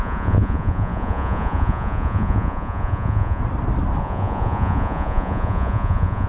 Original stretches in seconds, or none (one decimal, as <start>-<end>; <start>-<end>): 3.4-4.0